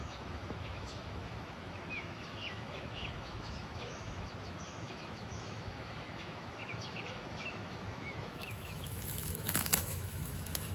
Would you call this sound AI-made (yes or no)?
yes